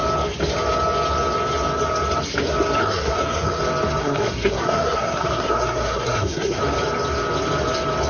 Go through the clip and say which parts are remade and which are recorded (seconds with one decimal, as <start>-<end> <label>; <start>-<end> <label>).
0.0-2.8 recorded; 2.8-3.6 remade; 3.6-4.0 recorded; 4.0-6.6 remade; 6.6-8.1 recorded